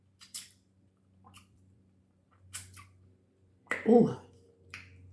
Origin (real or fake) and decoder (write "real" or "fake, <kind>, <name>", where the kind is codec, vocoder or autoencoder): fake, vocoder, BigVGAN v2